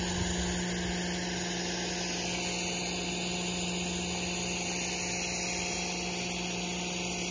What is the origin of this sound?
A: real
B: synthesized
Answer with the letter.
A